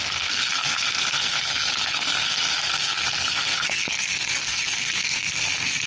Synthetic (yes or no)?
yes